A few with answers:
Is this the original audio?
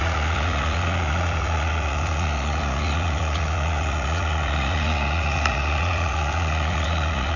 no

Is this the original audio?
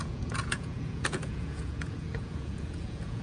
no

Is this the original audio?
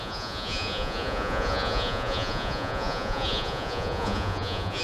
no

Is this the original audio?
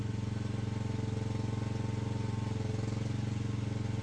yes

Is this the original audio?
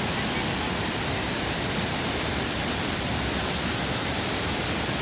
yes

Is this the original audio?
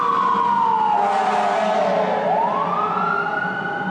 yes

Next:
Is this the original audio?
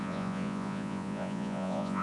no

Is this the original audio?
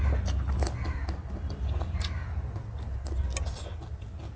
yes